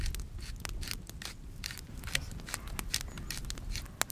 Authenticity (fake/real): real